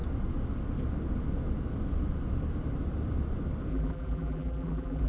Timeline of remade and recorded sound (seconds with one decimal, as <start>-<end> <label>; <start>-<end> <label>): 0.0-3.7 recorded; 3.7-5.1 remade